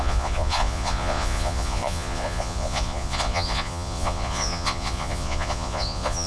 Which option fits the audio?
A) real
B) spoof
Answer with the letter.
B